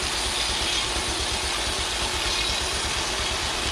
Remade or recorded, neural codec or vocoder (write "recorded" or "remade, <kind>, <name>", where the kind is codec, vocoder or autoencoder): recorded